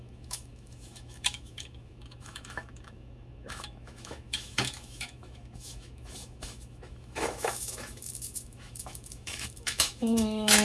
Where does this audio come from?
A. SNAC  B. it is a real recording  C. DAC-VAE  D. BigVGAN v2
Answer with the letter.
C